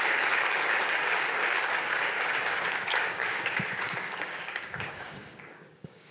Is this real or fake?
fake